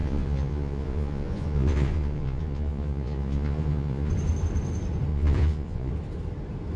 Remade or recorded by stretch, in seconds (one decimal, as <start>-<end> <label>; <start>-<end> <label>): 0.0-4.1 remade; 4.1-5.1 recorded; 5.1-5.9 remade; 5.9-6.8 recorded